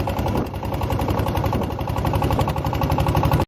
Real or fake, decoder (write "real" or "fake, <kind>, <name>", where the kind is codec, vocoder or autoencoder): real